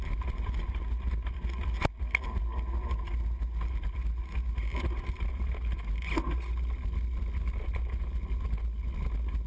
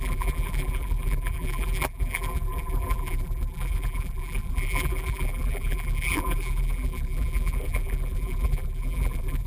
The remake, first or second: second